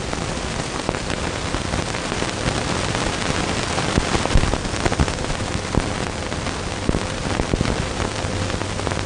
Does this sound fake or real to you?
fake